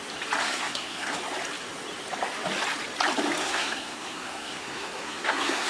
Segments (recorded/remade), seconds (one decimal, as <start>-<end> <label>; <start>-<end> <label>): 0.0-0.4 recorded; 0.4-1.2 remade; 1.2-3.4 recorded; 3.4-5.7 remade